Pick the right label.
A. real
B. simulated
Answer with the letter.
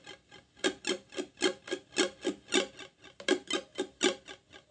A